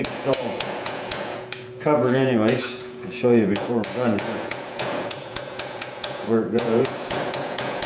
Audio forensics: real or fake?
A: fake